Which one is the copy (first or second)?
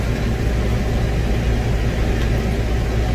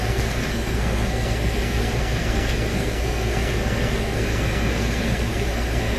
second